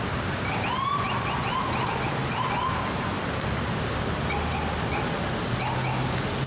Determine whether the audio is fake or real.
real